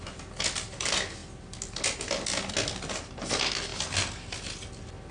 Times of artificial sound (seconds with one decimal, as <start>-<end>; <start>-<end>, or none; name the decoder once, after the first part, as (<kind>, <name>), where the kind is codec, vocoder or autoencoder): none